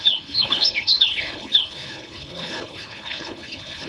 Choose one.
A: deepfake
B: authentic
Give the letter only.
A